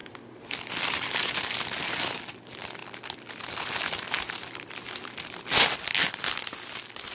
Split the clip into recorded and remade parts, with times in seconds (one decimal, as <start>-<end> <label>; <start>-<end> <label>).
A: 0.0-7.1 recorded